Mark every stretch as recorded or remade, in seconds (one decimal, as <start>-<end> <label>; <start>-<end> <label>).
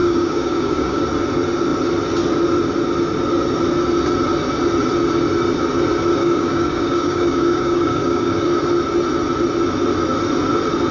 0.0-1.0 remade; 1.0-6.2 recorded; 6.2-8.5 remade; 8.5-10.9 recorded